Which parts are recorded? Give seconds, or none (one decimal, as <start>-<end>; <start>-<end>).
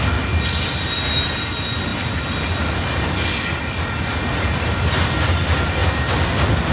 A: 0.0-6.7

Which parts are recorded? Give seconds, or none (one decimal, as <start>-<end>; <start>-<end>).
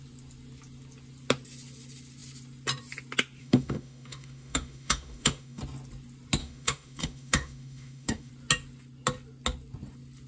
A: 0.0-3.4; 5.6-6.4; 8.3-10.3